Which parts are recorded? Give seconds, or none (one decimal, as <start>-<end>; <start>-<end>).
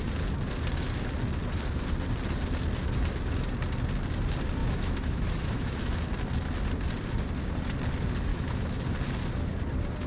0.0-4.6; 5.8-8.3; 8.8-10.1